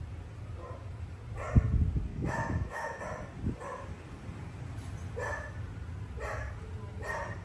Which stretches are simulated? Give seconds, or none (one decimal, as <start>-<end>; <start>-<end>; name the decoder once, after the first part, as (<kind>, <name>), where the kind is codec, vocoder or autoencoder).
2.1-3.0 (autoencoder, DAC-VAE)